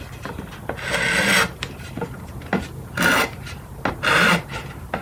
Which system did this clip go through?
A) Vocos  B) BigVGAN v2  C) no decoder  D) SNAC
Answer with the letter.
C